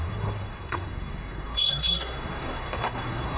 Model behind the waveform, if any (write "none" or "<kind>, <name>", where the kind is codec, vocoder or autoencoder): codec, SNAC